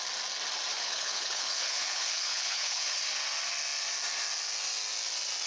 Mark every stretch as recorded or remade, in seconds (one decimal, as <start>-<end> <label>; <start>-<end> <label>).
0.0-0.7 recorded; 0.7-3.0 remade; 3.0-5.5 recorded